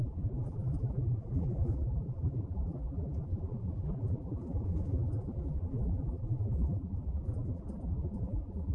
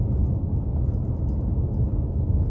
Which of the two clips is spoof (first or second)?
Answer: first